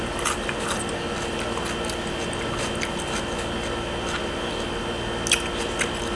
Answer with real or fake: real